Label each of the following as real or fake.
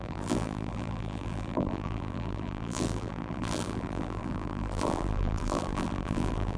fake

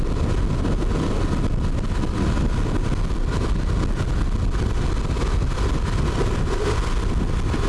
real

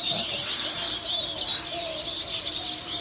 real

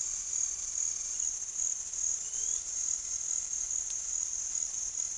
real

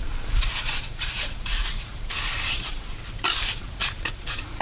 fake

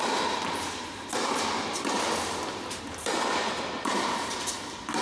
fake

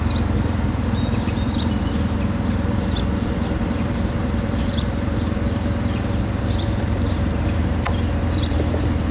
fake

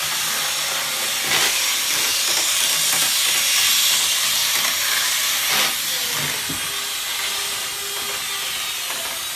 real